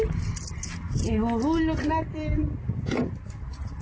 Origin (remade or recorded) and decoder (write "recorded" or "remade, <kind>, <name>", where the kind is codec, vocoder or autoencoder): recorded